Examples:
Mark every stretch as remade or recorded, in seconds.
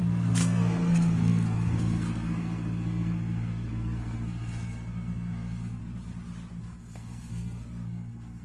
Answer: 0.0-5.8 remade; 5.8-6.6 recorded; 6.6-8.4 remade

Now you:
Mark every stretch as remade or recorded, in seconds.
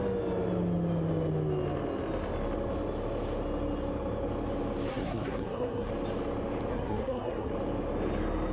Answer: 0.0-4.9 recorded; 4.9-5.9 remade; 5.9-6.7 recorded; 6.7-7.5 remade; 7.5-8.5 recorded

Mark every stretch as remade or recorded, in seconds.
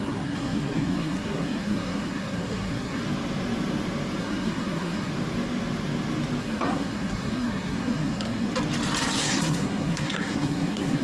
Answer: 0.0-3.0 remade; 3.0-4.2 recorded; 4.2-5.1 remade; 5.1-6.4 recorded; 6.4-8.5 remade; 8.5-9.2 recorded; 9.2-11.0 remade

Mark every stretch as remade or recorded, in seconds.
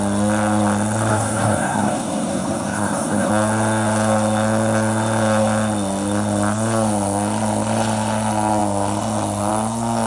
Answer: 0.0-1.1 recorded; 1.1-3.3 remade; 3.3-10.1 recorded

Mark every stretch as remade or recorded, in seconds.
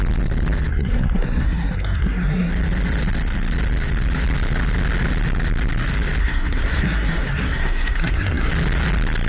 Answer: 0.0-0.7 recorded; 0.7-2.5 remade; 2.5-6.2 recorded; 6.2-8.5 remade; 8.5-9.3 recorded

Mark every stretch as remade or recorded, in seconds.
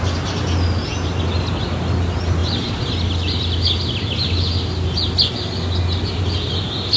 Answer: 0.0-7.0 recorded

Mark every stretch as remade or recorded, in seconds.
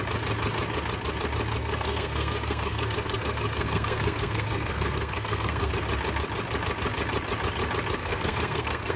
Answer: 0.0-1.6 recorded; 1.6-5.7 remade; 5.7-8.0 recorded; 8.0-9.0 remade